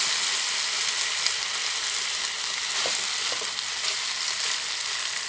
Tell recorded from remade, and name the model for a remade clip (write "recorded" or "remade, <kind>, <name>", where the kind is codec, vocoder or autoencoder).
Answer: recorded